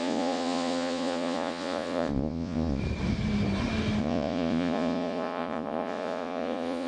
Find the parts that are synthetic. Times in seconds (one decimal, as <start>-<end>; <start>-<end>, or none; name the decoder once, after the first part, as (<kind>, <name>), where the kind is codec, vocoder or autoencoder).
0.0-2.8 (vocoder, Vocos); 4.0-6.9